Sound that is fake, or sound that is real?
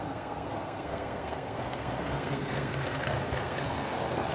fake